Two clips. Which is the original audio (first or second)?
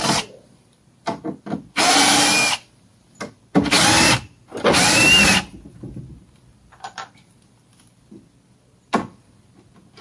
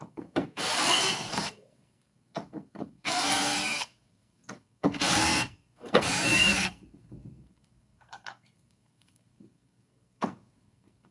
first